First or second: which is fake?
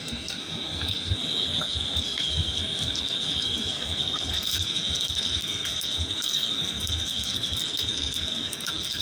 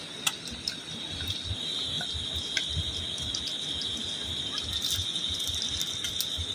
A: first